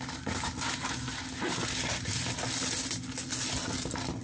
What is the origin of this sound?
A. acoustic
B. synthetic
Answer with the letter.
A